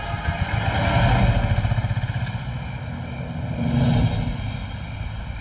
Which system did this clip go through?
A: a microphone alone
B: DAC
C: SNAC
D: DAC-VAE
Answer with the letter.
A